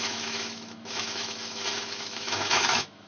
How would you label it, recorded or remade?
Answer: remade